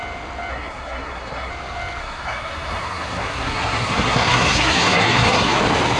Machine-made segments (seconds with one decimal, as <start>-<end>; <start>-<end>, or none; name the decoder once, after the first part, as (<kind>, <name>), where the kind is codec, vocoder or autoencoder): 0.5-1.5 (codec, SNAC); 2.0-5.6